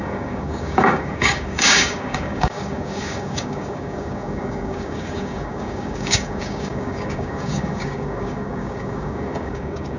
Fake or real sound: fake